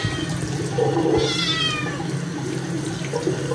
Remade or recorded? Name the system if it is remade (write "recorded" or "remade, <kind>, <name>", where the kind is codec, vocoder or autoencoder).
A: recorded